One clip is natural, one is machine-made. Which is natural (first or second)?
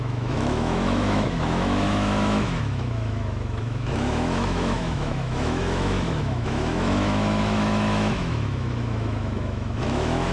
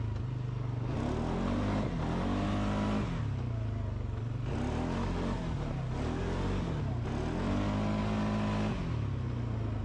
second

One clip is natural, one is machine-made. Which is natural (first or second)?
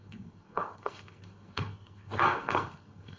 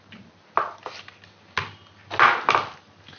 second